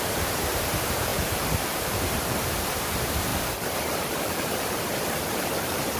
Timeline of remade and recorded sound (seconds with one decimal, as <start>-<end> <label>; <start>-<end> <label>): 0.0-3.3 remade; 3.3-4.0 recorded; 4.0-6.0 remade